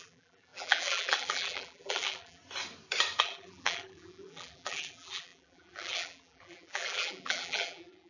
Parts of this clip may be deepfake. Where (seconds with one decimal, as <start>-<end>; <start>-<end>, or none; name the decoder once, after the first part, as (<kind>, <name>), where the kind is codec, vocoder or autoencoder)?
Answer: 0.0-2.4 (vocoder, BigVGAN v2); 3.2-8.1